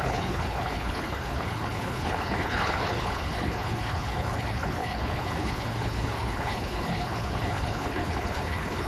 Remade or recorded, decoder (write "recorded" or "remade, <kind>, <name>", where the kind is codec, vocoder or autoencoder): remade, codec, HILCodec